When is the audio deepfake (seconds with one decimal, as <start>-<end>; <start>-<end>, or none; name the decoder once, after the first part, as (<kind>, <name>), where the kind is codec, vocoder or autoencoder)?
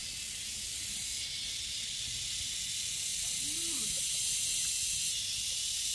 none